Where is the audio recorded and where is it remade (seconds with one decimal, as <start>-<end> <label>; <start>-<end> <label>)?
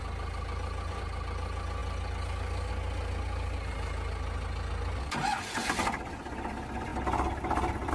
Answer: 0.0-7.9 recorded